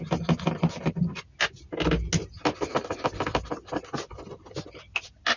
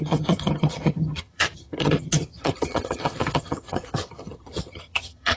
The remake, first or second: second